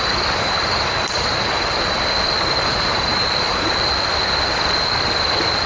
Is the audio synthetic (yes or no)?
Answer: no